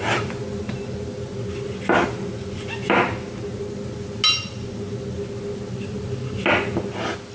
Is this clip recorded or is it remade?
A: recorded